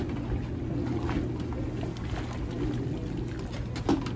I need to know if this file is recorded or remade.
recorded